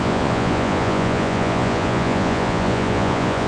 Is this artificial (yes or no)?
yes